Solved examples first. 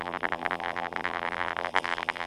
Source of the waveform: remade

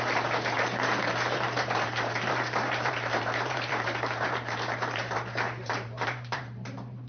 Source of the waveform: remade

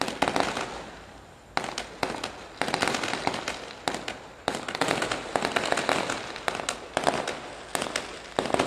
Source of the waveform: recorded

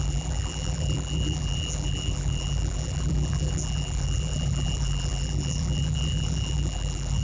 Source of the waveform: remade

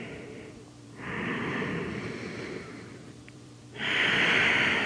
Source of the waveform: remade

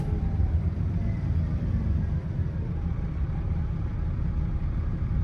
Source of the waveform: remade